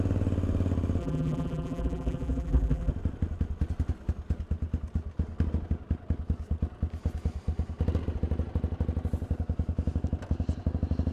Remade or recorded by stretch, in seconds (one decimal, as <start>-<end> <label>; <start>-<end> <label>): 0.0-1.0 recorded; 1.0-2.9 remade; 2.9-11.1 recorded